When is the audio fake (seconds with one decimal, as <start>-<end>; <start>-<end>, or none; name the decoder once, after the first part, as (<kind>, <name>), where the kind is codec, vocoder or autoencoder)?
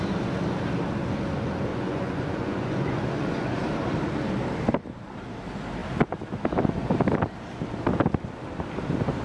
1.7-3.6 (vocoder, Vocos)